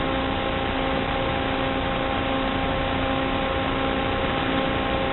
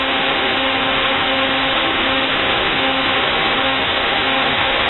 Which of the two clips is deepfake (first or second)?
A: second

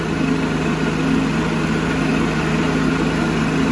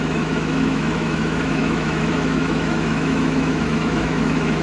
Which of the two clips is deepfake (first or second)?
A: second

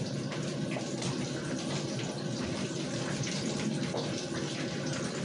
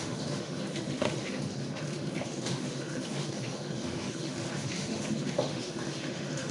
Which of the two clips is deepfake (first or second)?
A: second